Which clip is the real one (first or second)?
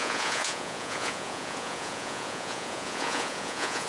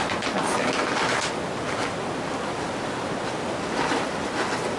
second